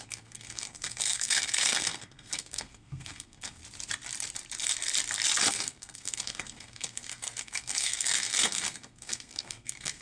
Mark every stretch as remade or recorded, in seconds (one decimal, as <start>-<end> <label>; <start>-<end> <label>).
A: 0.0-3.6 remade; 3.6-5.5 recorded; 5.5-10.0 remade